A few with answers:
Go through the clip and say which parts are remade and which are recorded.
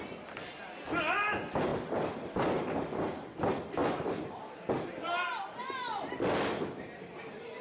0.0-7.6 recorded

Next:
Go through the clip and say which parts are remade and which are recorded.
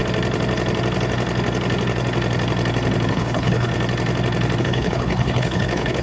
0.0-3.1 recorded; 3.1-3.7 remade; 3.7-4.6 recorded; 4.6-6.0 remade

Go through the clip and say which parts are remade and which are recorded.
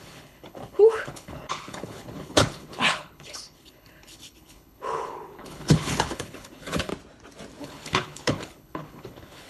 0.0-6.9 remade; 6.9-7.6 recorded; 7.6-9.5 remade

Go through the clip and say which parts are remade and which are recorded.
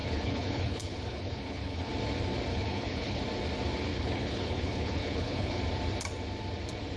0.0-1.9 remade; 1.9-2.5 recorded; 2.5-3.2 remade; 3.2-3.9 recorded; 3.9-5.6 remade; 5.6-7.0 recorded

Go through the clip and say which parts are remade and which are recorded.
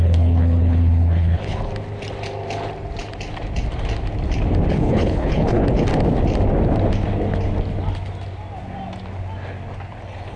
0.0-1.7 remade; 1.7-4.7 recorded; 4.7-5.6 remade; 5.6-10.0 recorded; 10.0-10.4 remade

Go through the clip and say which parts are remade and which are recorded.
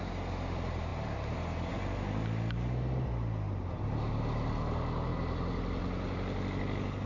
0.0-7.1 recorded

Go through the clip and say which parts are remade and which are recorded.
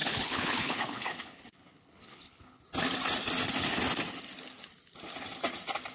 0.0-2.6 remade; 2.6-5.9 recorded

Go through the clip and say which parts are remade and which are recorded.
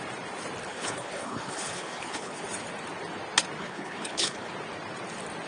0.0-0.7 recorded; 0.7-2.4 remade; 2.4-3.6 recorded; 3.6-4.5 remade; 4.5-5.5 recorded